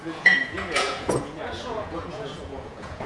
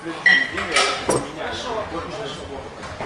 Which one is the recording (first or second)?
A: second